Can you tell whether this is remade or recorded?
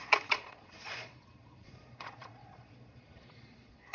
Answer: remade